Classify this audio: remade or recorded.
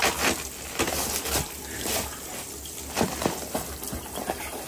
recorded